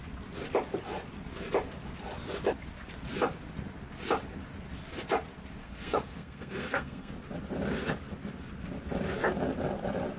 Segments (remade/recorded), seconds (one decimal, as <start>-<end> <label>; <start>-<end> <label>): 0.0-5.6 recorded; 5.6-7.1 remade; 7.1-10.2 recorded